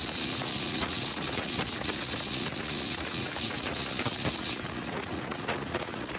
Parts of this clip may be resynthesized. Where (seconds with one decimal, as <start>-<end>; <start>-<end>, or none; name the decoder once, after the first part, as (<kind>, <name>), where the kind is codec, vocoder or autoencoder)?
0.0-6.2 (vocoder, Vocos)